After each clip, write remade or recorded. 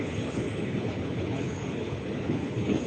remade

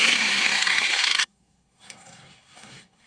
remade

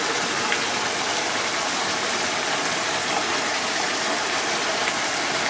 remade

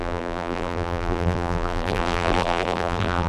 remade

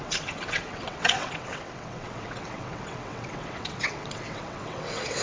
remade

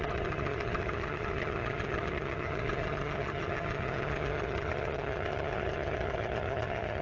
remade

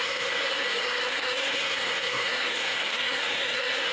remade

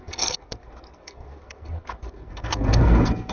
remade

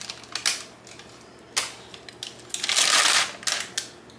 recorded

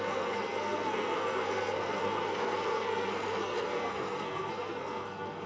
remade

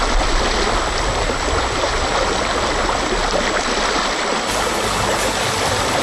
recorded